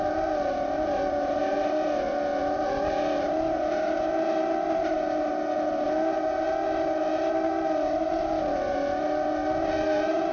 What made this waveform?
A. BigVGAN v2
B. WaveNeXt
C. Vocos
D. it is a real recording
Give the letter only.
D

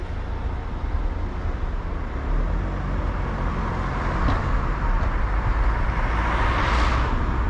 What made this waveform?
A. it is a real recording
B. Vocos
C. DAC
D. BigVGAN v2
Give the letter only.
A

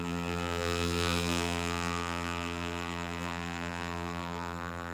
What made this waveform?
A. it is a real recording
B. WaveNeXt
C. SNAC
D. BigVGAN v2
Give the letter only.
D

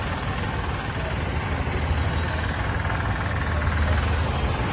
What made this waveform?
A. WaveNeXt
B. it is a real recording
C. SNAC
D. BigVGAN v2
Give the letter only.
B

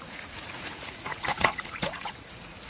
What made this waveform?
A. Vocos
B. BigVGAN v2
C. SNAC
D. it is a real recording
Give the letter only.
A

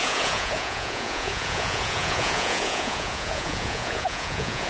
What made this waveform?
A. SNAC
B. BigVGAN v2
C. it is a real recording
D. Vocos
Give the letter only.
D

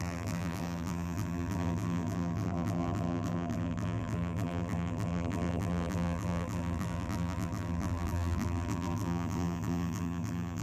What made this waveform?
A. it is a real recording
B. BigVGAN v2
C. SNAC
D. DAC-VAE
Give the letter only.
B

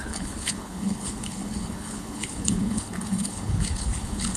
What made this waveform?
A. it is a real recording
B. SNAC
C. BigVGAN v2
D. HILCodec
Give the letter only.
D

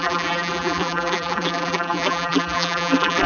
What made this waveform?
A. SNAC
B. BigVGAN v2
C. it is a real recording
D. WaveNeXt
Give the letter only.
B